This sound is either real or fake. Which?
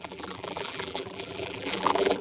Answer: fake